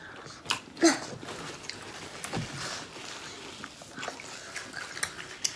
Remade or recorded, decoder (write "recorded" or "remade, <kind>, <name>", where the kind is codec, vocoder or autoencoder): recorded